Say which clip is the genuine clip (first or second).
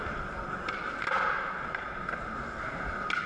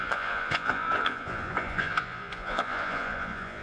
first